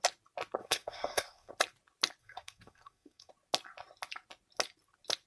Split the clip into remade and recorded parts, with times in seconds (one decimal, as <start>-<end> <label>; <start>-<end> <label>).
0.0-0.6 recorded; 0.6-1.5 remade; 1.5-2.2 recorded; 2.2-3.3 remade; 3.3-5.3 recorded